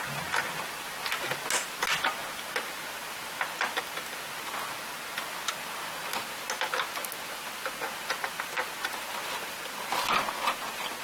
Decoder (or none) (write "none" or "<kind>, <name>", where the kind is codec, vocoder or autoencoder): none